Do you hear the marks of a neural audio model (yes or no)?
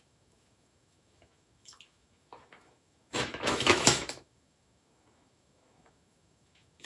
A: yes